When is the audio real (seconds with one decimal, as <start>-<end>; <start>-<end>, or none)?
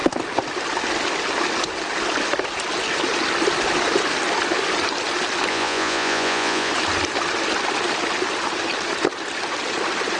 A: 0.0-5.5; 6.7-10.2